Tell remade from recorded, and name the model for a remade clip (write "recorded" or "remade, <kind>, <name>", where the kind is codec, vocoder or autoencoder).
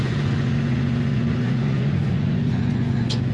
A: remade, vocoder, Vocos